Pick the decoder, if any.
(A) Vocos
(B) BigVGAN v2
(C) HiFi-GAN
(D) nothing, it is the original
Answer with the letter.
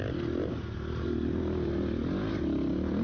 D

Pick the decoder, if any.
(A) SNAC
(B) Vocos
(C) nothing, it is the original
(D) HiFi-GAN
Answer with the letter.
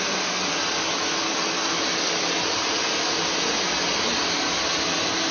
C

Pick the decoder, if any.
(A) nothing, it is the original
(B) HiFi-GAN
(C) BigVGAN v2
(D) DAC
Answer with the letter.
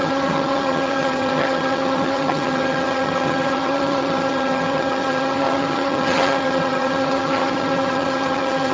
B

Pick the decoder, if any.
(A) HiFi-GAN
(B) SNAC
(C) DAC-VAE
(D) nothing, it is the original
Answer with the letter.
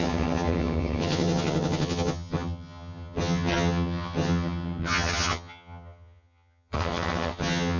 A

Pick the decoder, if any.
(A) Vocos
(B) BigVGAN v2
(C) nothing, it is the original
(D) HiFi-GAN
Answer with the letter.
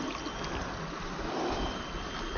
C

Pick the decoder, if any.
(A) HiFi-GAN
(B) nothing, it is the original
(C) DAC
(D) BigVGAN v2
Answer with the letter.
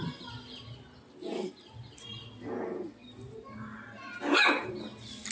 B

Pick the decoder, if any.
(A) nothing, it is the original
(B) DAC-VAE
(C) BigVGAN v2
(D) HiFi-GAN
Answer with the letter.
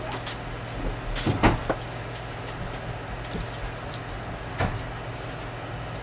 A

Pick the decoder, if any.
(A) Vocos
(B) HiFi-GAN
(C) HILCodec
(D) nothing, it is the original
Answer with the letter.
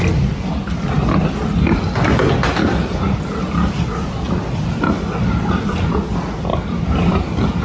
D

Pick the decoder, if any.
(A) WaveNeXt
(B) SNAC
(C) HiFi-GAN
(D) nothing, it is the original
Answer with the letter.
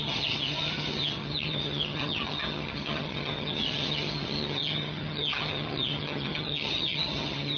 C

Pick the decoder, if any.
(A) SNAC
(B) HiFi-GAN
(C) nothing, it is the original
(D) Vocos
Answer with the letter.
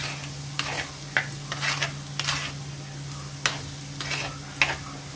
C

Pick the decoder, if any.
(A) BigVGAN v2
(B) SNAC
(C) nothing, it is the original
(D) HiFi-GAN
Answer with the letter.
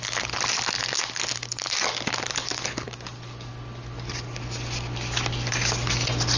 C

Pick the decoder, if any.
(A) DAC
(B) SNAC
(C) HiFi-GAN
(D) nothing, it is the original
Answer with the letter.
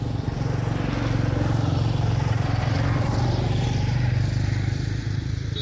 D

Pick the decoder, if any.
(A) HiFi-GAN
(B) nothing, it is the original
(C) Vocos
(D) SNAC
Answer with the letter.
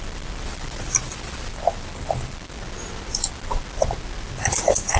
B